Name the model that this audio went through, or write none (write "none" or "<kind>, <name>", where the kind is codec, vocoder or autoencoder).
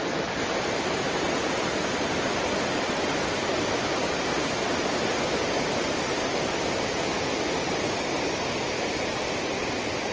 none